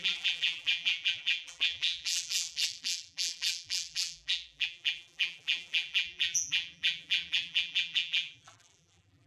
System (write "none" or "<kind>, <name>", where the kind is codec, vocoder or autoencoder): vocoder, BigVGAN v2